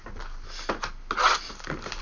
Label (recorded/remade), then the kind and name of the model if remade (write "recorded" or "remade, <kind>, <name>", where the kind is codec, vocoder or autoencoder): recorded